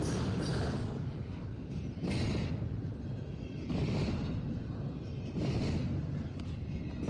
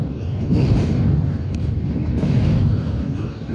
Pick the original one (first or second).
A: first